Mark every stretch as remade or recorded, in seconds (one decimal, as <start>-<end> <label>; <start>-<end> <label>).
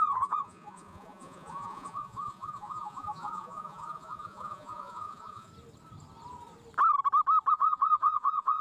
0.0-5.5 remade; 5.5-7.5 recorded; 7.5-8.6 remade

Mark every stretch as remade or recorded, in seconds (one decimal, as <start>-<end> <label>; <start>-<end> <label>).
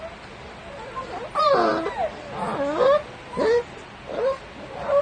0.0-5.0 recorded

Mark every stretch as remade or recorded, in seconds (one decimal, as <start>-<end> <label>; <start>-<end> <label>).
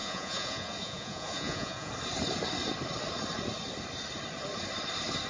0.0-1.9 remade; 1.9-5.3 recorded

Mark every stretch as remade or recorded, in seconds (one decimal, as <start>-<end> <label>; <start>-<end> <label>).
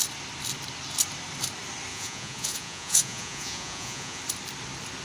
0.0-1.9 recorded; 1.9-4.2 remade; 4.2-5.0 recorded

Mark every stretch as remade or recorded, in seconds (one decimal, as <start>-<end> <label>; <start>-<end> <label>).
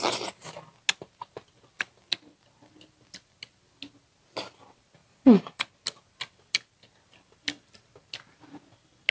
0.0-5.0 recorded; 5.0-5.7 remade; 5.7-9.1 recorded